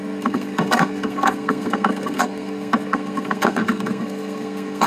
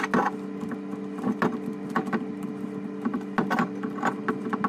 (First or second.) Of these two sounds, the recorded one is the second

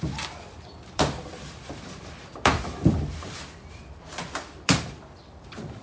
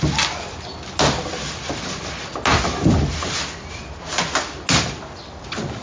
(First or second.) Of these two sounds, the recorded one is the second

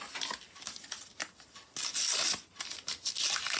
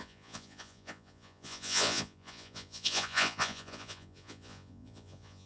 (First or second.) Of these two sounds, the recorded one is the first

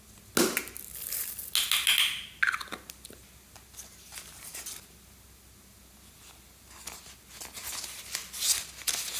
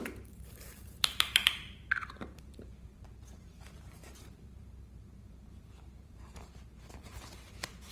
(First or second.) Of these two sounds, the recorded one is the first